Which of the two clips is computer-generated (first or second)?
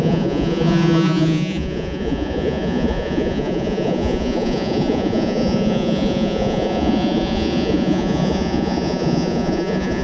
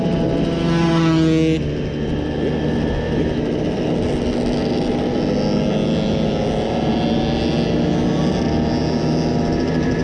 first